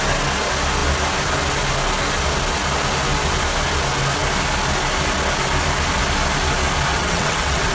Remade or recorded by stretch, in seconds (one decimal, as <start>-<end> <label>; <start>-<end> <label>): 0.0-6.9 recorded; 6.9-7.7 remade